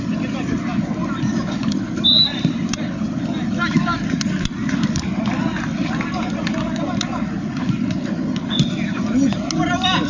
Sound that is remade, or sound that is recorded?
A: recorded